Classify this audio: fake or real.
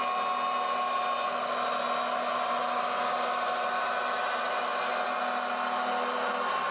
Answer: real